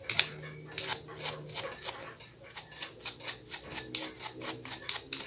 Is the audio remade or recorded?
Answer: recorded